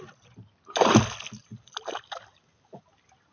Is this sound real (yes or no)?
yes